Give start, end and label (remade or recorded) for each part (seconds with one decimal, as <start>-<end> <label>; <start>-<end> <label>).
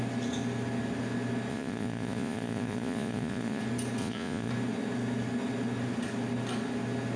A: 0.0-1.5 recorded; 1.5-3.6 remade; 3.6-4.0 recorded; 4.0-4.5 remade; 4.5-7.2 recorded